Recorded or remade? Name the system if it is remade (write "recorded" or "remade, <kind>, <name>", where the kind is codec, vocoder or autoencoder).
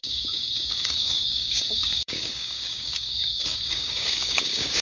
remade, codec, DAC